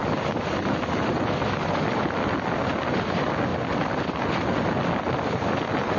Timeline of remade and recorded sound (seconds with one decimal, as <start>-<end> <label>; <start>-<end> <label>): 0.0-6.0 recorded

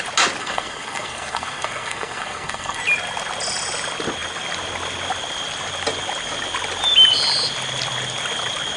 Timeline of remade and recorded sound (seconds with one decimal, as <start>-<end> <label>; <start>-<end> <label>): 0.0-0.4 recorded; 0.4-2.8 remade; 2.8-8.8 recorded

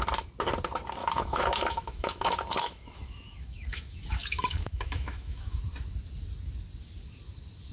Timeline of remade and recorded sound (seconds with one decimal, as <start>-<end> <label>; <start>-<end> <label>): 0.0-1.0 recorded; 1.0-5.6 remade; 5.6-7.7 recorded

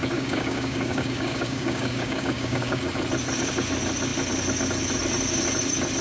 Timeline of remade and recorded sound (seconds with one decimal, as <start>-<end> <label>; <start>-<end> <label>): 0.0-2.8 remade; 2.8-6.0 recorded